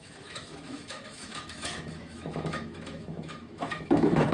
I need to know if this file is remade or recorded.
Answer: remade